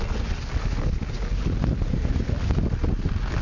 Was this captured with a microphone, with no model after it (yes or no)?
yes